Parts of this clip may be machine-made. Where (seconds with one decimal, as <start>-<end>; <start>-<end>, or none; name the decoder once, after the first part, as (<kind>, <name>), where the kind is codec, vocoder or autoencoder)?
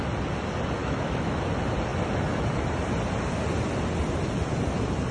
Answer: 0.8-1.4 (autoencoder, DAC-VAE)